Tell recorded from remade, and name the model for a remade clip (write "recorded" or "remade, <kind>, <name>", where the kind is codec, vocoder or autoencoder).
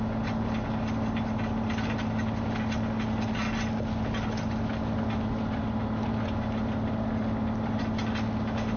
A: recorded